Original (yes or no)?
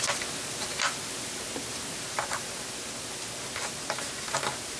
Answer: yes